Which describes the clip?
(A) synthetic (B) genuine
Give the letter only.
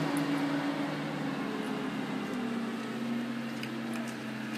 B